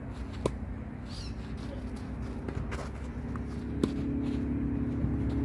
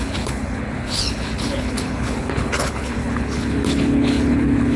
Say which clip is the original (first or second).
first